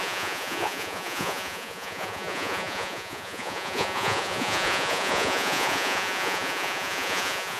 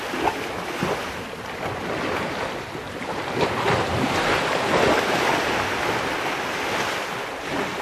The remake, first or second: first